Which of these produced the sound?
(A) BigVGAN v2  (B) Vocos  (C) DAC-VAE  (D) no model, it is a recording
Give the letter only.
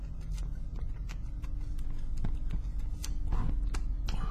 D